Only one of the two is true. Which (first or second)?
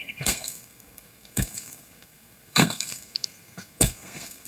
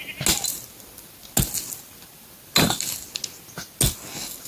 second